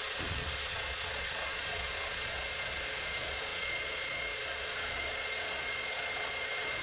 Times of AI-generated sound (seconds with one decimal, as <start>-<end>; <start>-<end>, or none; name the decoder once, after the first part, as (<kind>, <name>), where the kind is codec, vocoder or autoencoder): 0.0-6.8 (vocoder, Vocos)